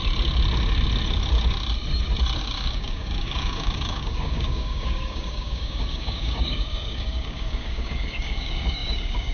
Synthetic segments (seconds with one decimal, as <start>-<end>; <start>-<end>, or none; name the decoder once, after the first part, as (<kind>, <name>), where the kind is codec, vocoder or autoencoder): 2.4-9.3 (codec, DAC)